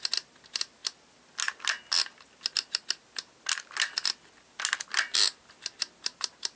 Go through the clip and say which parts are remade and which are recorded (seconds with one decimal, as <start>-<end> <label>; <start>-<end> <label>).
0.0-6.6 recorded